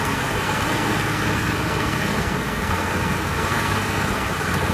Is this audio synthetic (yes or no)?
yes